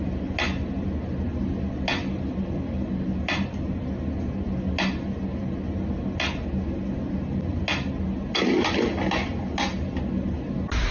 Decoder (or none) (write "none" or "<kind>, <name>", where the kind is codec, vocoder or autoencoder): none